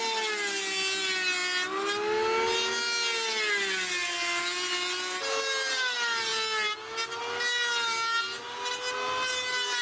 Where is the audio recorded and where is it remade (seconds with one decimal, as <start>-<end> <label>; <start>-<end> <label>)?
0.0-9.8 recorded